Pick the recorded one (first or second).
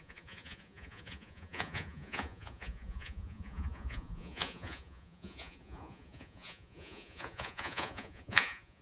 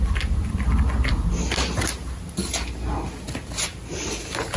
second